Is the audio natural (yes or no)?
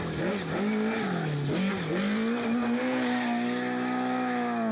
yes